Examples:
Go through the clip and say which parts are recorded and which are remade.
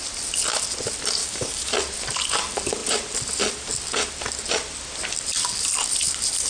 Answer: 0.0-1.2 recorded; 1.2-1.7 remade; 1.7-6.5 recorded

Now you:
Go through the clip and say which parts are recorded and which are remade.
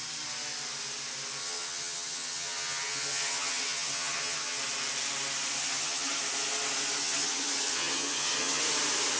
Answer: 0.0-1.4 recorded; 1.4-4.6 remade; 4.6-5.6 recorded; 5.6-6.2 remade; 6.2-7.0 recorded; 7.0-8.6 remade; 8.6-9.2 recorded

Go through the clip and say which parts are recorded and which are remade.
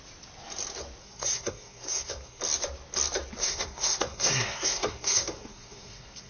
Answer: 0.0-1.0 recorded; 1.0-2.4 remade; 2.4-3.4 recorded; 3.4-6.3 remade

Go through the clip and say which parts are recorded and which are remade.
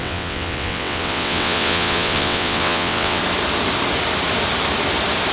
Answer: 0.0-3.2 remade; 3.2-5.3 recorded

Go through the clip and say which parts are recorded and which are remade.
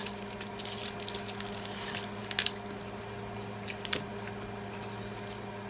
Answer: 0.0-5.7 recorded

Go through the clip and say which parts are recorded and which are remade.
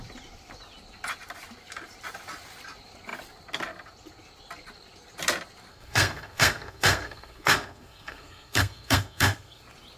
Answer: 0.0-5.7 recorded; 5.7-9.6 remade; 9.6-10.0 recorded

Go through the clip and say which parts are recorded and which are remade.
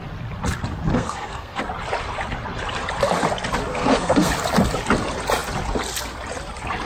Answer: 0.0-0.9 recorded; 0.9-1.6 remade; 1.6-3.7 recorded; 3.7-4.3 remade; 4.3-6.9 recorded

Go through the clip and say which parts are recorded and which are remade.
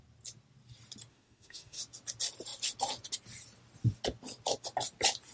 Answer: 0.0-1.1 recorded; 1.1-1.8 remade; 1.8-5.3 recorded